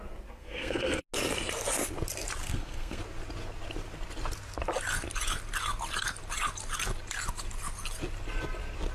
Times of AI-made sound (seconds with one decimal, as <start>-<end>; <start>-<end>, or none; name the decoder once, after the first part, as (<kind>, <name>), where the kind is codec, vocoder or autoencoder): 0.4-1.0 (codec, SNAC); 2.4-3.0